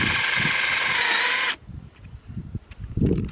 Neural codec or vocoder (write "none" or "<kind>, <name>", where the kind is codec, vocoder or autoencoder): none